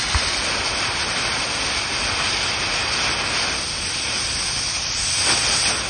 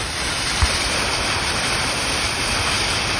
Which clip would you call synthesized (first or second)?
second